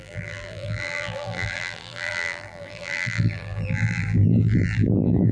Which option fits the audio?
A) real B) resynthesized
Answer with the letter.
B